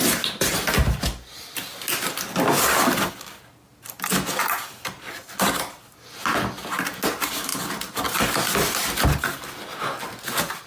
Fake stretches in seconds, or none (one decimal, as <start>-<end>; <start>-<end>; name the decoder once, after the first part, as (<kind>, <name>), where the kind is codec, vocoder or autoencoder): none

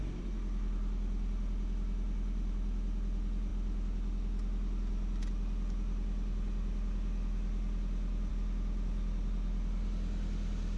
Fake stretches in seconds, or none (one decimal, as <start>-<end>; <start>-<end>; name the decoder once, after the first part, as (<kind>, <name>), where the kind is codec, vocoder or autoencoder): none

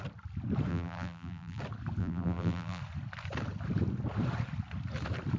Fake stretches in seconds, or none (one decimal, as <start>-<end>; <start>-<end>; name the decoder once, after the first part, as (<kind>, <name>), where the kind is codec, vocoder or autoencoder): 0.7-1.6 (vocoder, BigVGAN v2); 2.0-2.8

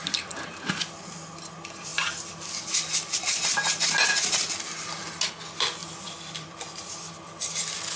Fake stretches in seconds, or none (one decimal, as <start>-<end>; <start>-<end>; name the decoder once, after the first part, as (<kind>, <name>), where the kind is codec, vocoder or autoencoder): 5.8-6.9 (vocoder, BigVGAN v2)

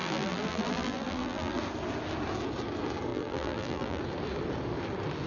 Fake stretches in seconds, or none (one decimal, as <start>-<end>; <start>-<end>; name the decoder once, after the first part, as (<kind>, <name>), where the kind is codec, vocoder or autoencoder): 0.0-1.6 (vocoder, BigVGAN v2); 3.1-4.0

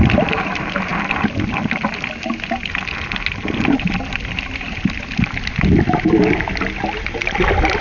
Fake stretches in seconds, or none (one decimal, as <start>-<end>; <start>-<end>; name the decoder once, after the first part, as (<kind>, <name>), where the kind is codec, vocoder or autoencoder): none